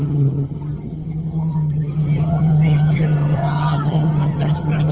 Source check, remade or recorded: remade